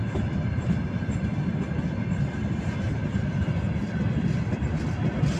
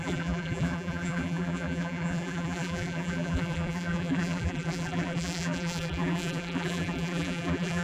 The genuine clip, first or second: first